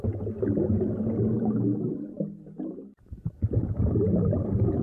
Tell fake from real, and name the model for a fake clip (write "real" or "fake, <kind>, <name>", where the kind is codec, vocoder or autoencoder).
real